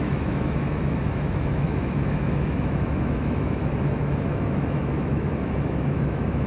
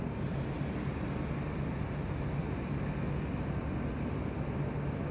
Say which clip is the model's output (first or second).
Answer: first